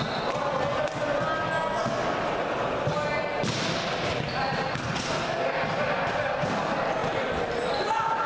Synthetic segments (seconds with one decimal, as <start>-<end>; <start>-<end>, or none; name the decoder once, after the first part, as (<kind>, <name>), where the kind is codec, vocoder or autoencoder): none